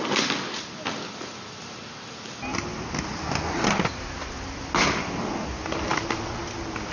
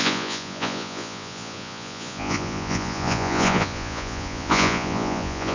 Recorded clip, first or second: first